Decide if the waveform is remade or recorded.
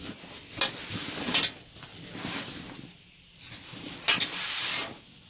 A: recorded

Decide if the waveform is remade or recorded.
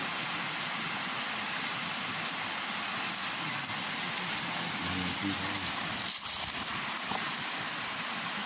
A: recorded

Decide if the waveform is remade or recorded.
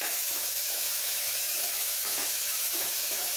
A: remade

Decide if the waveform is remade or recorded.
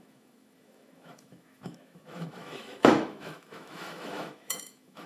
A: remade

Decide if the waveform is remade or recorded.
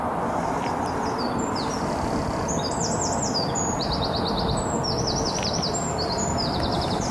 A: recorded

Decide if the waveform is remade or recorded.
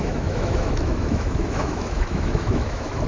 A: remade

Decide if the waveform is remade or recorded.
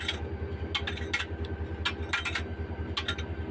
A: recorded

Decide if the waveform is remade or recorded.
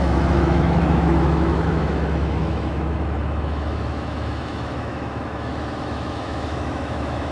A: remade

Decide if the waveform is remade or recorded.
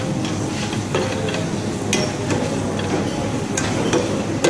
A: recorded